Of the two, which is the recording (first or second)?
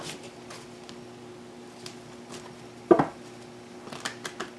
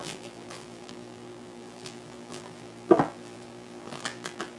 first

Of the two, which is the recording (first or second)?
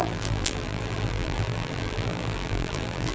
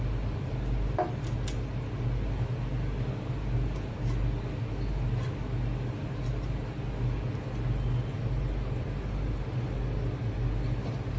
second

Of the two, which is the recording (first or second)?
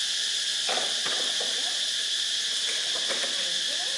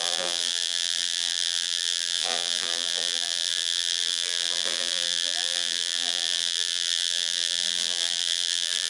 first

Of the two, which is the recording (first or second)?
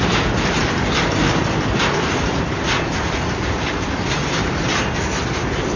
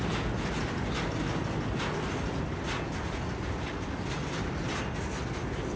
second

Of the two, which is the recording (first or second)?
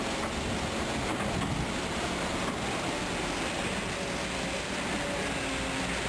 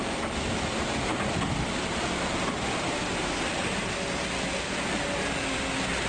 first